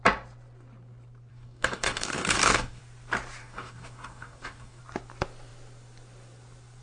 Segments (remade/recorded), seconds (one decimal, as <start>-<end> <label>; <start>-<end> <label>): 0.0-1.3 recorded; 1.3-2.8 remade; 2.8-3.4 recorded; 3.4-4.8 remade; 4.8-6.8 recorded